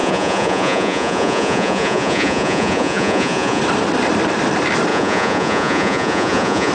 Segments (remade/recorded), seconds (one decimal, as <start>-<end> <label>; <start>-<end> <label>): 0.0-3.6 remade; 3.6-4.9 recorded; 4.9-6.7 remade